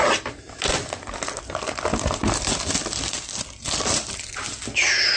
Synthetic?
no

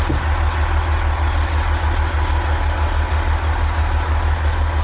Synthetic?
no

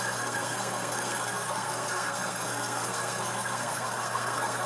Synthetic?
yes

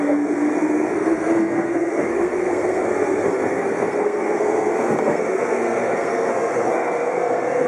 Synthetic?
yes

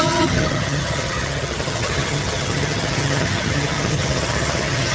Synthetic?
yes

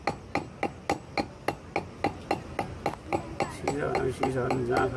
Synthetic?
no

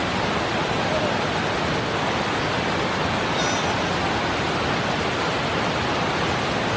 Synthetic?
no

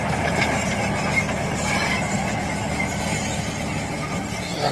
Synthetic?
no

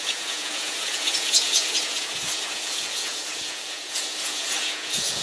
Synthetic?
yes